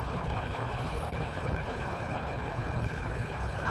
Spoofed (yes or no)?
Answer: yes